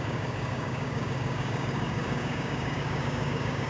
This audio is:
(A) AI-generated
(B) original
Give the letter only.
A